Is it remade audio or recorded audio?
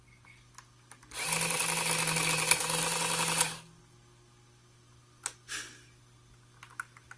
recorded